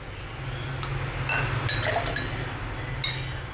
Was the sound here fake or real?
real